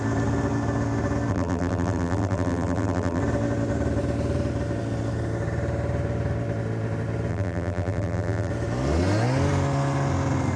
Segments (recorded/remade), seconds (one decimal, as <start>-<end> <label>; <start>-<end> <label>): 0.0-1.3 recorded; 1.3-3.2 remade; 3.2-7.3 recorded; 7.3-8.5 remade; 8.5-10.6 recorded